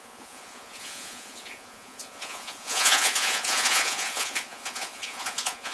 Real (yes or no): no